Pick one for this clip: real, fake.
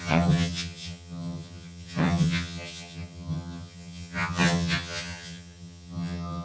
fake